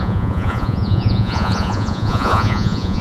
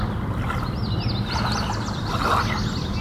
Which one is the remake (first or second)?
first